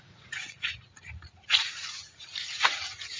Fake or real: fake